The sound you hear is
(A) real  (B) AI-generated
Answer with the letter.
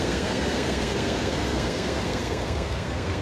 B